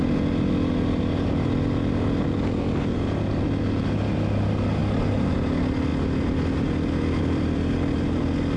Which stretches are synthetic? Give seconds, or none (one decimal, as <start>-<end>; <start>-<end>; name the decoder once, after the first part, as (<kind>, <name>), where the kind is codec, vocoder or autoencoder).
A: none